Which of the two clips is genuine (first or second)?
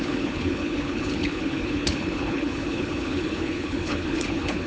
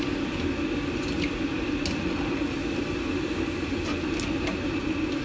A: second